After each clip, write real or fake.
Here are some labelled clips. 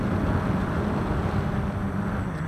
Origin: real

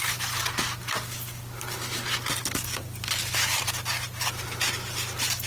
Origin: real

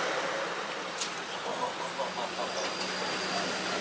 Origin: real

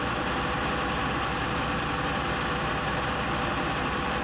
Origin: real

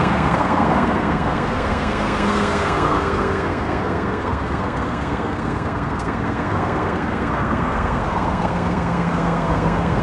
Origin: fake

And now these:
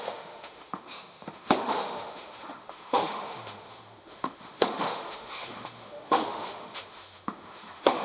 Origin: fake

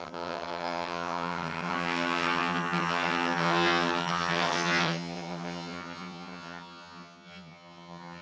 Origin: fake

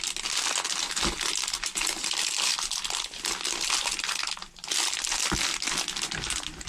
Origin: real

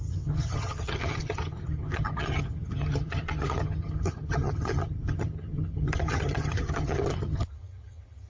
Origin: fake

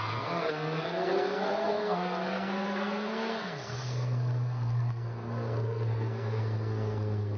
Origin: fake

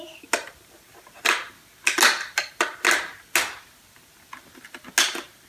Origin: real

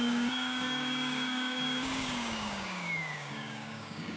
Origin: fake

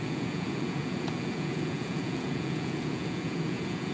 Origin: fake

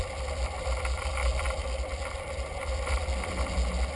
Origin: real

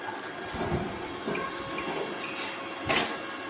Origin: real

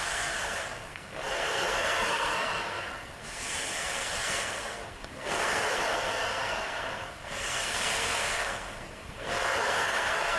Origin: fake